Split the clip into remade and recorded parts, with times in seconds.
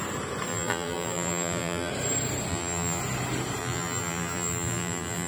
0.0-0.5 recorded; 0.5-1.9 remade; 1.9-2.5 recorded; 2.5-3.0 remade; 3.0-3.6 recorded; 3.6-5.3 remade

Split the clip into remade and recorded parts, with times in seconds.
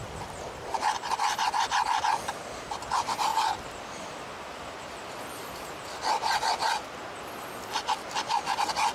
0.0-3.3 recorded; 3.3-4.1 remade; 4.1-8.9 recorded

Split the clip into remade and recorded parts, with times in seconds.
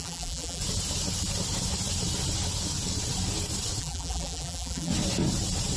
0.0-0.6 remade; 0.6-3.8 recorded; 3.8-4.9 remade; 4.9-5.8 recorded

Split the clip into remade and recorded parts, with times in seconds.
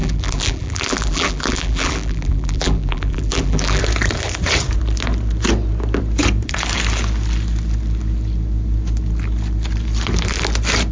0.0-3.8 remade; 3.8-10.9 recorded